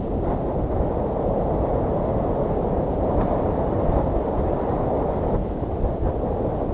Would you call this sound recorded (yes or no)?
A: yes